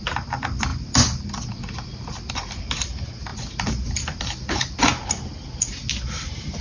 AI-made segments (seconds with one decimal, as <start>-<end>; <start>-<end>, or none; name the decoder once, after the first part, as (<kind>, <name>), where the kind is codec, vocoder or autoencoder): none